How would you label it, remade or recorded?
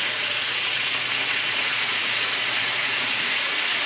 remade